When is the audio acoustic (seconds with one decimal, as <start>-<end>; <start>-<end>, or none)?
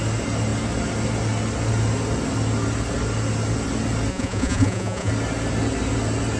0.0-4.1; 5.1-6.4